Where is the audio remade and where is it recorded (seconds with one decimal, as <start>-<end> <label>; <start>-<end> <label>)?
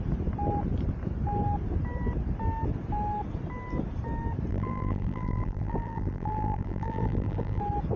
0.0-4.5 recorded; 4.5-7.6 remade; 7.6-8.0 recorded